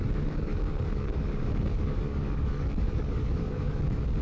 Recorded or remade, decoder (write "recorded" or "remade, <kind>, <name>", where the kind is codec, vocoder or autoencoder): remade, codec, DAC